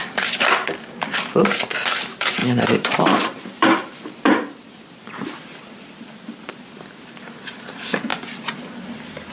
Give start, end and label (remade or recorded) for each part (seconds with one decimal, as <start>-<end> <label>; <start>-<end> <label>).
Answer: 0.0-2.4 recorded; 2.4-7.3 remade; 7.3-8.1 recorded; 8.1-9.3 remade